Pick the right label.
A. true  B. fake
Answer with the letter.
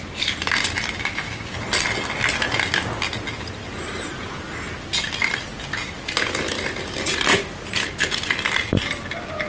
A